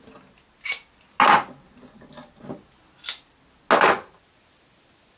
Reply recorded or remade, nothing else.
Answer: recorded